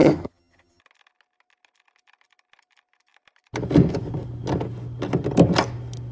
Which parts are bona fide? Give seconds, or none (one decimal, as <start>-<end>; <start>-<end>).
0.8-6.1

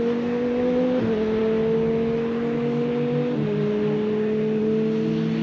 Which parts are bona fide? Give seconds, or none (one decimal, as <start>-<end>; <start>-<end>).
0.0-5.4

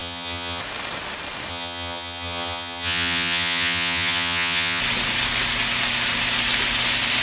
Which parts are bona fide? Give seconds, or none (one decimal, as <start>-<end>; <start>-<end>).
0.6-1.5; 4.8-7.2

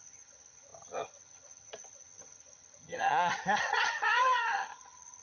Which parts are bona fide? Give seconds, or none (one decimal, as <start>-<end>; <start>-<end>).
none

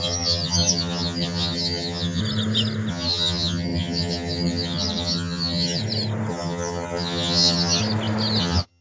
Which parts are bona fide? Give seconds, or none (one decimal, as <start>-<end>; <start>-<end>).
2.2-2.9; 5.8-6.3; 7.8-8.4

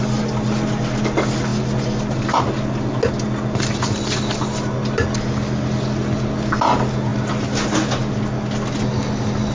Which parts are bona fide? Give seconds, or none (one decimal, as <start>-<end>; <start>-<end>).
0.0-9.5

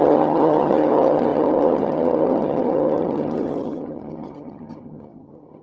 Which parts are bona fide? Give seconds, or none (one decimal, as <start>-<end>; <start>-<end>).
none

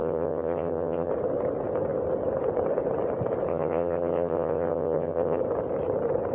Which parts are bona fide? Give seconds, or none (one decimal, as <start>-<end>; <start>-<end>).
1.1-3.5; 5.4-6.3